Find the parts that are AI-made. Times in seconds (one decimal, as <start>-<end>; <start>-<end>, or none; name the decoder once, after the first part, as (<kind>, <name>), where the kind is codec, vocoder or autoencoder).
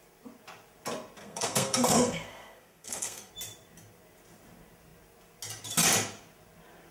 1.2-3.3 (codec, SNAC)